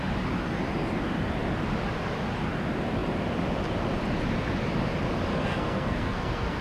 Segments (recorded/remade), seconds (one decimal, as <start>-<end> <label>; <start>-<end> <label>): 0.0-5.3 recorded; 5.3-6.6 remade